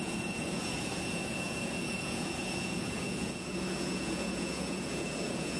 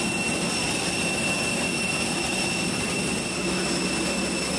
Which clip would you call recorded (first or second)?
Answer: second